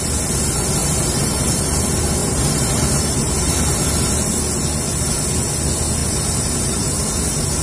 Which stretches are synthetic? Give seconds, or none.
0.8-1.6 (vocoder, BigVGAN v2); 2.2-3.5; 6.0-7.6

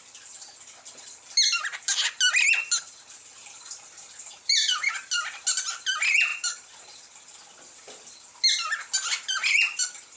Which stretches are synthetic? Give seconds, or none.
3.4-4.9 (vocoder, BigVGAN v2)

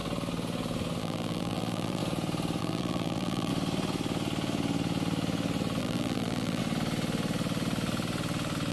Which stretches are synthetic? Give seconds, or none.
1.0-2.0 (vocoder, BigVGAN v2); 2.6-3.5; 5.8-6.6